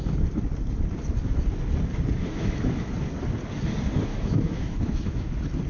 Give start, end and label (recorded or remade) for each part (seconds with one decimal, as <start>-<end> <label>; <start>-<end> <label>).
0.0-2.2 recorded; 2.2-2.9 remade; 2.9-4.1 recorded; 4.1-5.3 remade; 5.3-5.7 recorded